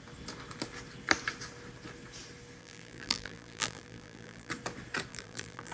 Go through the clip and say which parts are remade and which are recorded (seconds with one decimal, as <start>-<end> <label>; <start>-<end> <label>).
0.0-2.6 recorded; 2.6-4.5 remade; 4.5-5.1 recorded; 5.1-5.7 remade